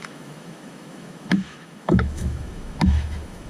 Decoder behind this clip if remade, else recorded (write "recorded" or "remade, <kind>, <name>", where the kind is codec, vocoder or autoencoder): remade, autoencoder, DAC-VAE